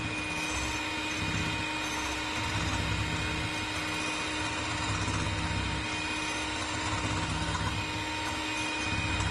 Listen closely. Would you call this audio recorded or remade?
recorded